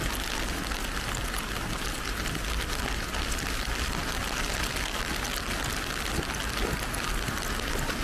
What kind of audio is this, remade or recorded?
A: recorded